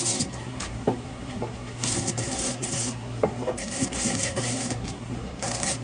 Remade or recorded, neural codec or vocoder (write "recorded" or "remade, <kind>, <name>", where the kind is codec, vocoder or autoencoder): remade, codec, SNAC